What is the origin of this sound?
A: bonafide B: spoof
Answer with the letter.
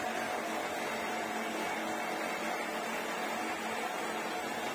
A